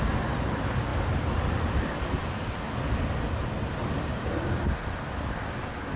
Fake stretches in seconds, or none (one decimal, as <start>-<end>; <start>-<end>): none